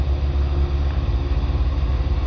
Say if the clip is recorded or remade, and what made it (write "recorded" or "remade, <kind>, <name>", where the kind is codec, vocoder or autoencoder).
recorded